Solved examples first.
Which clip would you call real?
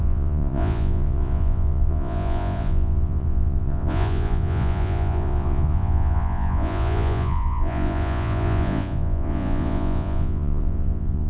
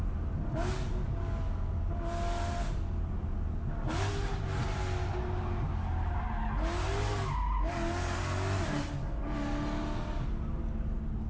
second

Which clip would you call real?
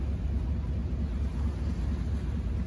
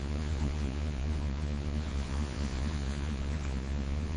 first